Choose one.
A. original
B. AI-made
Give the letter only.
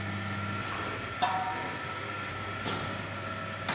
A